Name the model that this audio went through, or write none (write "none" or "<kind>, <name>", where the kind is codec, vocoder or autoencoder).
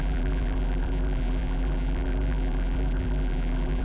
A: vocoder, BigVGAN v2